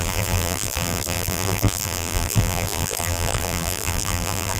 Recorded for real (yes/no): no